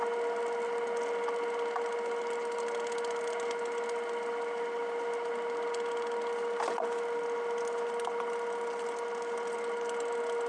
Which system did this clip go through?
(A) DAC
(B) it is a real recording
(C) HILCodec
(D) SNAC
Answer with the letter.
B